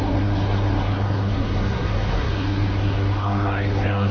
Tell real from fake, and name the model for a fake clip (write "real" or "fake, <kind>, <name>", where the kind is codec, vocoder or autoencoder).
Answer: fake, codec, SNAC